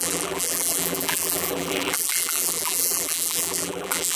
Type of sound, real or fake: fake